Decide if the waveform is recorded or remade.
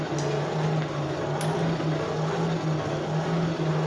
recorded